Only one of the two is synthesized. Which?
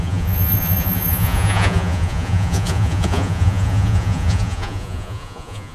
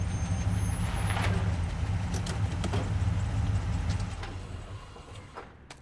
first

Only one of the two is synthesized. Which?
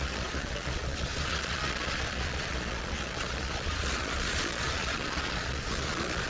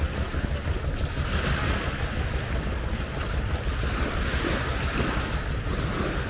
first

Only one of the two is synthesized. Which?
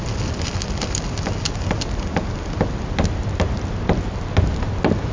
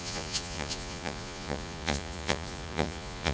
second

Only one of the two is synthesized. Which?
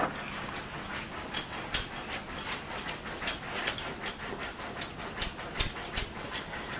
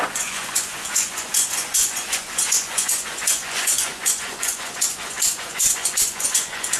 second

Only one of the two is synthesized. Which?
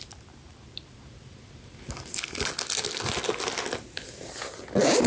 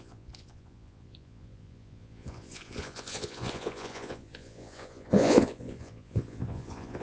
second